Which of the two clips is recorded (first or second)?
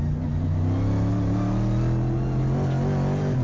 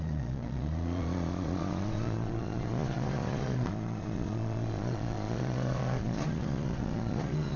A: first